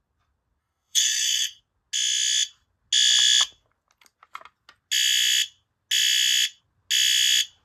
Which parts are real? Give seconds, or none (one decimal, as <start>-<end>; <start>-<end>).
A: 0.0-0.6; 1.6-7.6